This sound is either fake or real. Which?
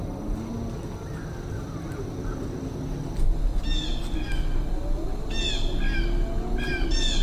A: real